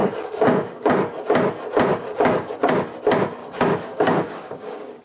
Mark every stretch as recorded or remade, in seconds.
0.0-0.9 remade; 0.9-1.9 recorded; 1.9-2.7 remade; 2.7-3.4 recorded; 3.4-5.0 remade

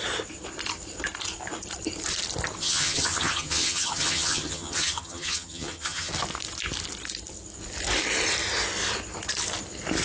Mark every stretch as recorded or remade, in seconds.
0.0-2.6 recorded; 2.6-6.1 remade; 6.1-10.0 recorded

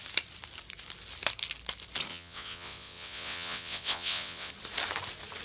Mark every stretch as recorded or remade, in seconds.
0.0-2.1 recorded; 2.1-4.5 remade; 4.5-5.4 recorded

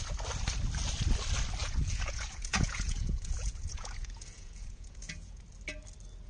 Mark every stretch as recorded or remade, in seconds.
0.0-1.6 recorded; 1.6-5.4 remade; 5.4-6.3 recorded

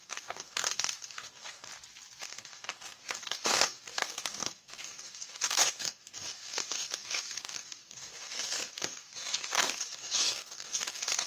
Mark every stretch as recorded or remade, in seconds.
0.0-1.7 remade; 1.7-2.2 recorded; 2.2-11.3 remade

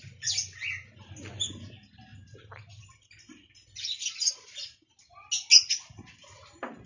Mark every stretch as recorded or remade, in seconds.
0.0-6.9 recorded

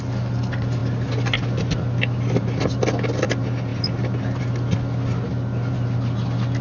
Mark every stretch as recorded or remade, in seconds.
0.0-6.6 recorded

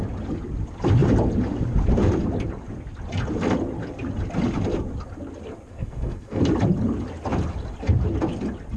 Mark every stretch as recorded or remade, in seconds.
0.0-5.7 recorded; 5.7-6.4 remade; 6.4-8.8 recorded